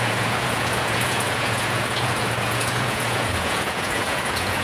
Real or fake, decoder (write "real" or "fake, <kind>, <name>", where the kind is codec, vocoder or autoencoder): fake, vocoder, Vocos